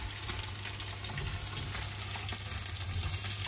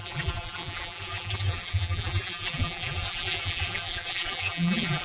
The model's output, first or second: second